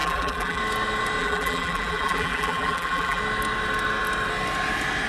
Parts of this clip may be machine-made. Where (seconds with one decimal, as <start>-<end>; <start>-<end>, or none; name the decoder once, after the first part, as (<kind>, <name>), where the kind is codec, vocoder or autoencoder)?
0.0-0.6 (vocoder, BigVGAN v2); 1.2-3.2